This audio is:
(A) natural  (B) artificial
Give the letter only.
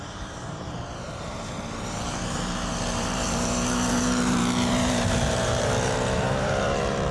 B